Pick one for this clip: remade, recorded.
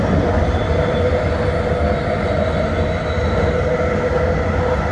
recorded